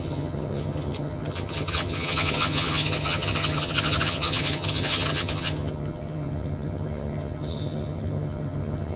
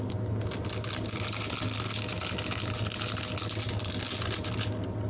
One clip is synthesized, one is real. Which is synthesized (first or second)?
first